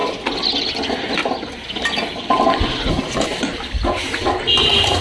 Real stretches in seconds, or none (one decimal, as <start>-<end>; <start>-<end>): 0.0-5.0